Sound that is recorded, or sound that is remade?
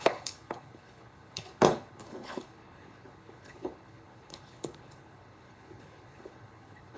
remade